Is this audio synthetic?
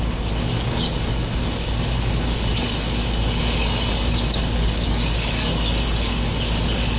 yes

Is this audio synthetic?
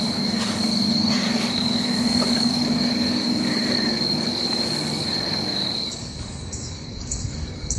yes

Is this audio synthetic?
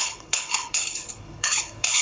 yes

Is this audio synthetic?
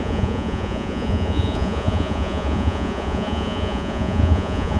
yes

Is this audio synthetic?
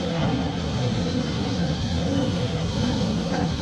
yes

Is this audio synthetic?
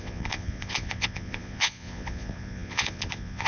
yes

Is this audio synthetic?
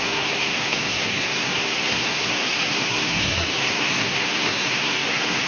yes